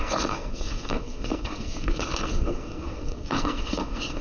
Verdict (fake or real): fake